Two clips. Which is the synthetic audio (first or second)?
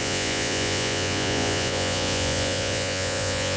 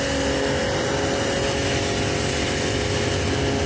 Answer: first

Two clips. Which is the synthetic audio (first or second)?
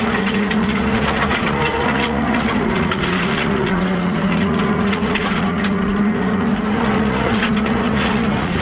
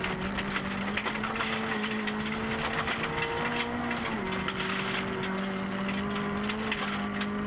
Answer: first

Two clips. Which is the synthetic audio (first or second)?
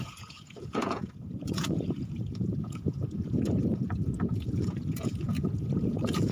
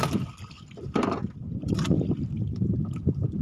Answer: first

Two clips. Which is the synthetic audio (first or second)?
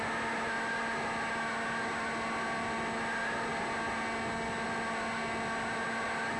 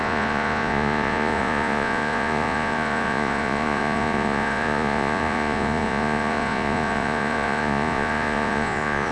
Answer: second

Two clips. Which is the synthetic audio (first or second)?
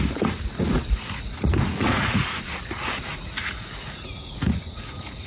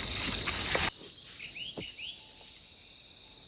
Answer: first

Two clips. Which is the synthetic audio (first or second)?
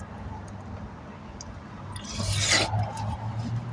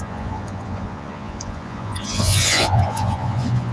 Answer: second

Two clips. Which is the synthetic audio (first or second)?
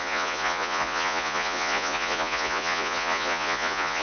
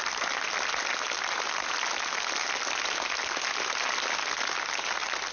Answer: first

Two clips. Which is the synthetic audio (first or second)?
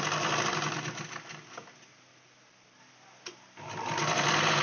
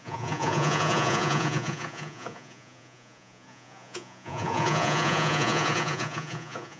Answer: second